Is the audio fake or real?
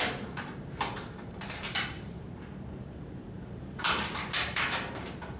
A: fake